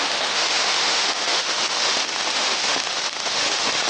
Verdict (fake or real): fake